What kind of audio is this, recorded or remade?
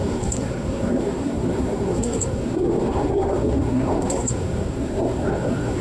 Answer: remade